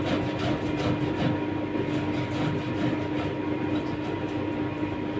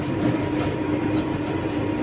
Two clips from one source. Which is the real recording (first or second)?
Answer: first